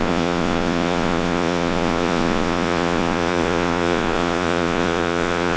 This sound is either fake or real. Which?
fake